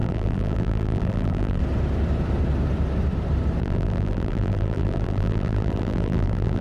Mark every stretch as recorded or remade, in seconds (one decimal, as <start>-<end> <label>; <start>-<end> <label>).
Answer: 0.0-1.6 remade; 1.6-3.6 recorded; 3.6-6.6 remade